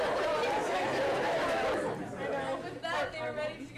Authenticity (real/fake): real